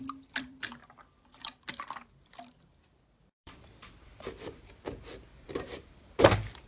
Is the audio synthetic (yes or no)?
yes